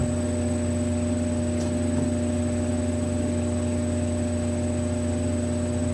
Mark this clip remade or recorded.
recorded